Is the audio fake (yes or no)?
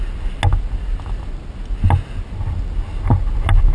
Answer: no